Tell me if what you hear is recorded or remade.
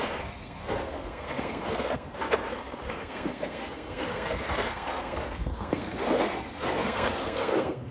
remade